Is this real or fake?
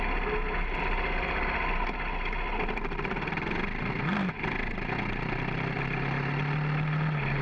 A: real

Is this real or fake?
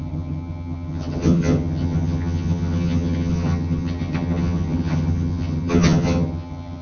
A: fake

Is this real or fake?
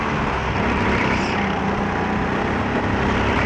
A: real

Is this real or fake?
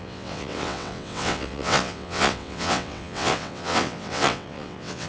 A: fake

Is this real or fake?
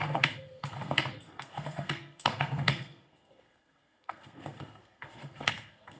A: fake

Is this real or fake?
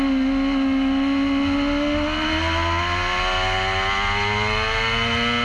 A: real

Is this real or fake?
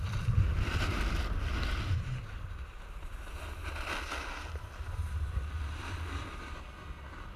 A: real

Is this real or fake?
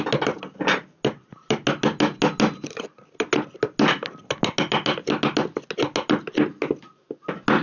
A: real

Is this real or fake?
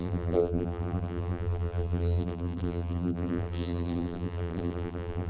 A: fake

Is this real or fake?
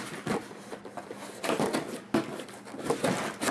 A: real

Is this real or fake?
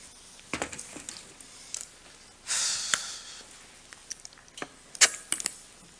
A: real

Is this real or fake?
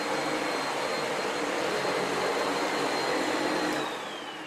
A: real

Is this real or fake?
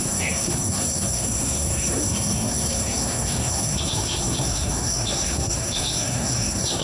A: fake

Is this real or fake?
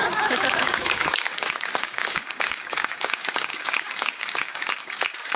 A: fake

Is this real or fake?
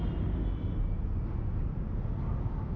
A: real